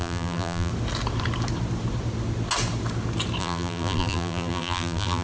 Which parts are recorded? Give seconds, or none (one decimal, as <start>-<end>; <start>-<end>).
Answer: 0.7-3.4